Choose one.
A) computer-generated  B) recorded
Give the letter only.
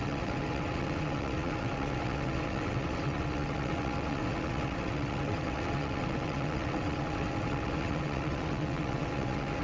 A